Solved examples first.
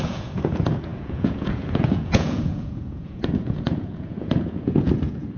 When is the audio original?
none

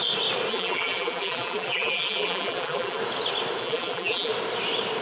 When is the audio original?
0.0-0.5; 3.0-3.6; 4.3-5.0

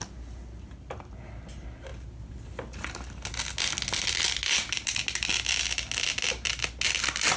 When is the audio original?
0.0-7.4

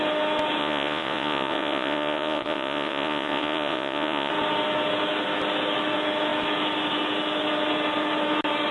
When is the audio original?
0.0-0.6; 4.3-8.7